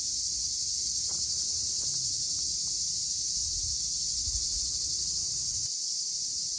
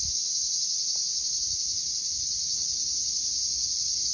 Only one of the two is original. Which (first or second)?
second